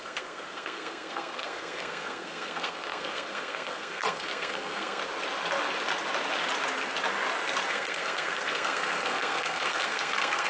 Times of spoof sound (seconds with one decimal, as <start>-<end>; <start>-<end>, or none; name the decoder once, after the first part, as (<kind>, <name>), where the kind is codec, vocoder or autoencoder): 0.0-5.0 (codec, SNAC); 7.7-10.5